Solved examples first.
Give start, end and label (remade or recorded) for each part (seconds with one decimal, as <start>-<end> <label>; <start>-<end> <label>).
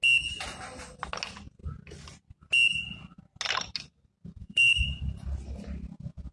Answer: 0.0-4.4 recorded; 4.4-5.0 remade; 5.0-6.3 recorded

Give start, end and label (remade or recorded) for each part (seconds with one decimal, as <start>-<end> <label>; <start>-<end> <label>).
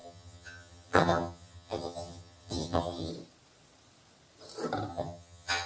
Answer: 0.0-3.1 remade; 3.1-4.9 recorded; 4.9-5.7 remade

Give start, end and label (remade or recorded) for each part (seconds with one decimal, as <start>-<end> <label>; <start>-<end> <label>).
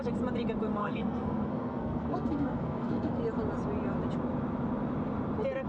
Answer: 0.0-0.8 recorded; 0.8-3.2 remade; 3.2-5.7 recorded